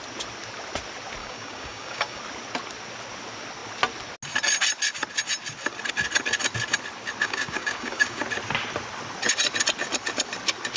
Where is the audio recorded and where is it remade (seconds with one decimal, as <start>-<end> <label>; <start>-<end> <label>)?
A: 0.0-1.2 recorded; 1.2-2.2 remade; 2.2-7.2 recorded; 7.2-8.2 remade; 8.2-10.8 recorded